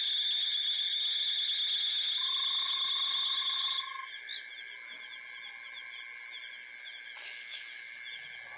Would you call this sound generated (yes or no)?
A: no